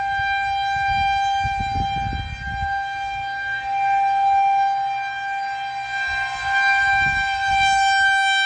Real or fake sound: real